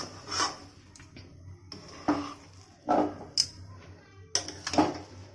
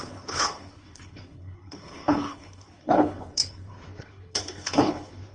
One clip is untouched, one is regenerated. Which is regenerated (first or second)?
second